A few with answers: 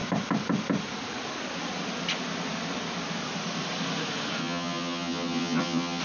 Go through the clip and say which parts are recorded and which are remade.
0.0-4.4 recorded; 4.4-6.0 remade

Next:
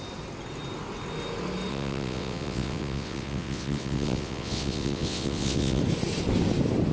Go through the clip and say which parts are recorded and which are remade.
0.0-1.7 recorded; 1.7-5.8 remade; 5.8-6.9 recorded

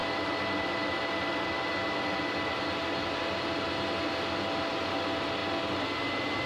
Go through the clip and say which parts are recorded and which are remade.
0.0-6.5 recorded

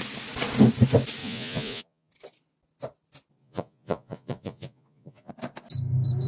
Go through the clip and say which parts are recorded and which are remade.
0.0-1.2 recorded; 1.2-2.1 remade; 2.1-3.4 recorded; 3.4-5.3 remade; 5.3-6.3 recorded

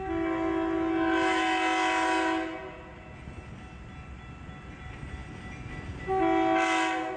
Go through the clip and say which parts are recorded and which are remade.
0.0-7.2 recorded